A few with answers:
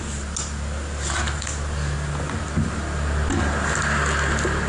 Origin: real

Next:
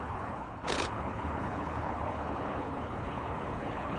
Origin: fake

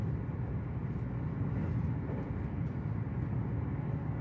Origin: real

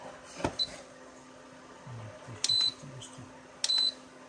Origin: real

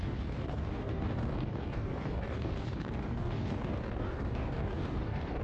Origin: fake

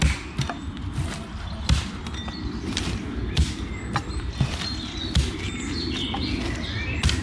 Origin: real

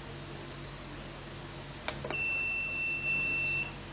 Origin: real